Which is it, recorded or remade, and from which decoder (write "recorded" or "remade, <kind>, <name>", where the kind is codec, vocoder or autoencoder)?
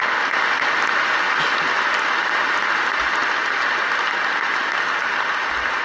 recorded